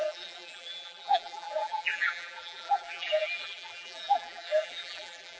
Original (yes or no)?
no